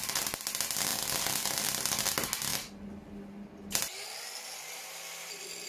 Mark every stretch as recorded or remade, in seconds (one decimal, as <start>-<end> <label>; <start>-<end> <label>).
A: 0.0-0.9 recorded; 0.9-1.6 remade; 1.6-2.5 recorded; 2.5-4.9 remade; 4.9-5.7 recorded